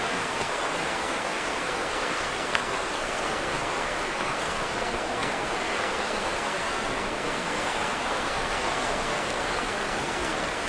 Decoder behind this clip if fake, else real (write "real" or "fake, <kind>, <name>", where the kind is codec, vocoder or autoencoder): fake, codec, SNAC